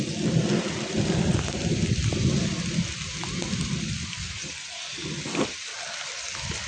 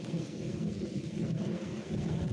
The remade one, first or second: second